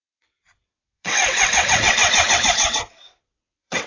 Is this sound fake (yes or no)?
yes